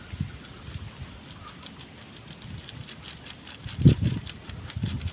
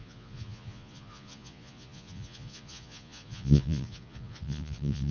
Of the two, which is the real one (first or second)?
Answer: first